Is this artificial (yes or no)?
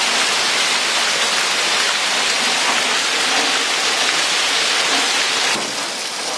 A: no